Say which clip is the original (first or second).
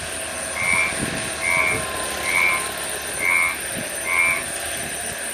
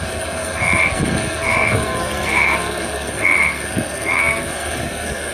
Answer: first